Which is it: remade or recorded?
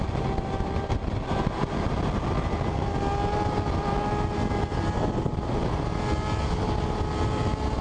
recorded